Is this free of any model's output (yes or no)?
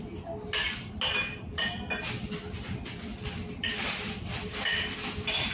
yes